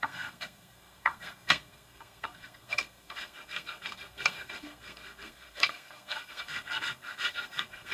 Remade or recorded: remade